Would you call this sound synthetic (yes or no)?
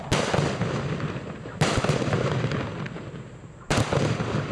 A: no